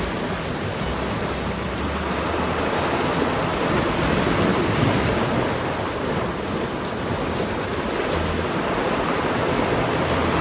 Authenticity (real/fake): real